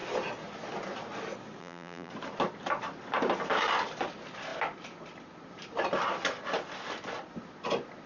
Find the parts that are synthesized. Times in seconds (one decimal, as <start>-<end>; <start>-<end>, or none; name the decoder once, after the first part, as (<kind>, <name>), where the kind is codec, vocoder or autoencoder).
1.6-2.1 (vocoder, BigVGAN v2)